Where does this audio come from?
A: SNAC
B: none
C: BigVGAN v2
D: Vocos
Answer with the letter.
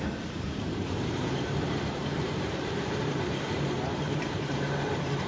C